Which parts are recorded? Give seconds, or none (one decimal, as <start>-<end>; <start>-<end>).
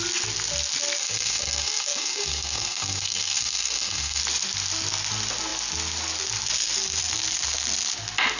0.0-1.0; 4.2-8.4